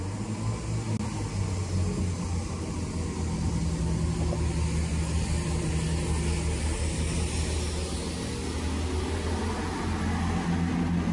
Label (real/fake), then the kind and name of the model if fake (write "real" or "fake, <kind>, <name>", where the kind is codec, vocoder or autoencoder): real